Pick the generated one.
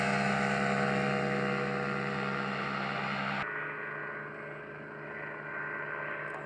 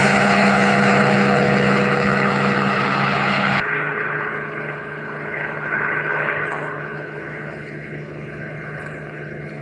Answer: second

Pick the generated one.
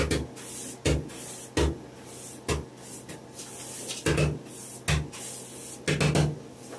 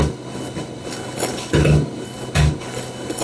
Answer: second